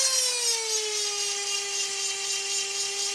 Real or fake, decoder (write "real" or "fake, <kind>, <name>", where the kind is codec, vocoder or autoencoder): real